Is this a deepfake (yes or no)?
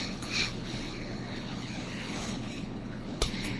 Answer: yes